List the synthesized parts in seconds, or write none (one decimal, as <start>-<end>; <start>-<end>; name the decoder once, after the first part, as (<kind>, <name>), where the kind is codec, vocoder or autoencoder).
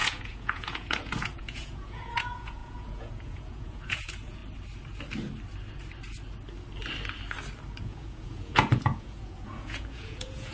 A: 0.0-4.4 (vocoder, Vocos); 7.8-10.5